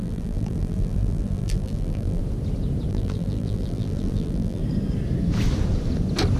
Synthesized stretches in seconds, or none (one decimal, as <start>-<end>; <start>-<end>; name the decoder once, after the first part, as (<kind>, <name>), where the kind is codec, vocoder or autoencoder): 0.0-2.2 (vocoder, BigVGAN v2); 2.9-4.6